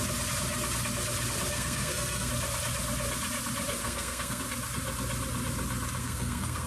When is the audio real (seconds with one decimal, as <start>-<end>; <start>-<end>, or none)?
0.0-1.5; 2.3-3.8; 4.4-6.0